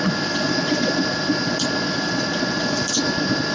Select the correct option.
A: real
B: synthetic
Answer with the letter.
B